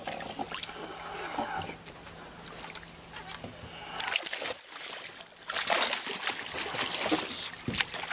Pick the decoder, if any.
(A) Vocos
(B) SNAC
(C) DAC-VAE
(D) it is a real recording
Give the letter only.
D